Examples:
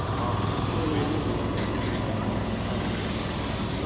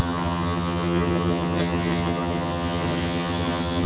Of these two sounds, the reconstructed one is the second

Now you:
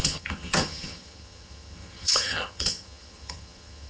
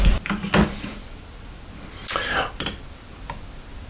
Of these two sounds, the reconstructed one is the first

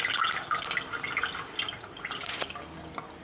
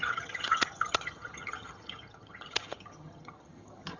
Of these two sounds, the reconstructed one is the second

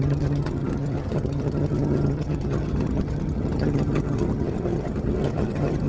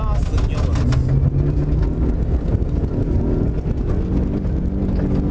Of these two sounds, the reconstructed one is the first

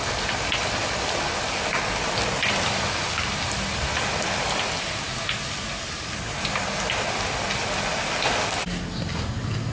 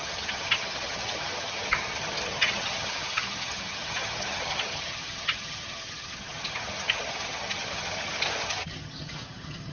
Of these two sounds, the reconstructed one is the second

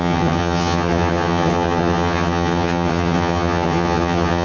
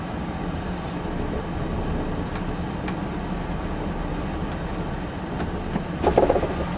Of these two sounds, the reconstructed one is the first